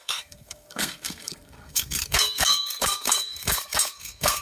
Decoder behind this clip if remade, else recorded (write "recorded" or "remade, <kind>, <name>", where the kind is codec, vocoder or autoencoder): remade, codec, SNAC